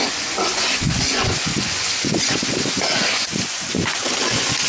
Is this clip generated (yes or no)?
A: yes